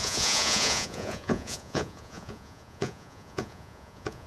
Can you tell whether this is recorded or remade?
remade